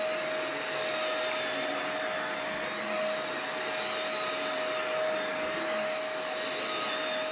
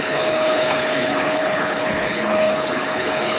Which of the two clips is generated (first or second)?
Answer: second